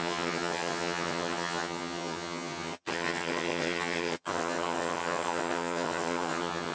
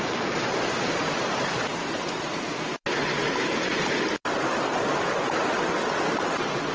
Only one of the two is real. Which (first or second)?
second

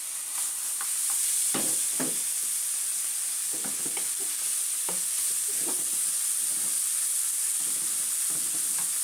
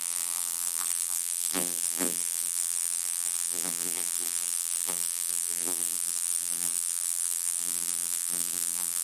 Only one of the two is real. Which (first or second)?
first